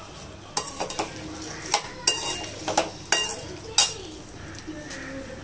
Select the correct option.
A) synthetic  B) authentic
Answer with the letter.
B